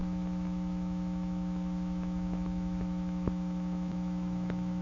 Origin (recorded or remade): remade